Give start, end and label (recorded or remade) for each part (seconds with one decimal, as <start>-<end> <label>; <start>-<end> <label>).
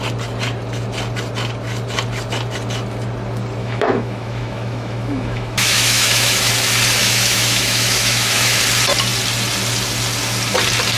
0.0-3.6 recorded; 3.6-6.5 remade; 6.5-7.0 recorded; 7.0-8.6 remade; 8.6-11.0 recorded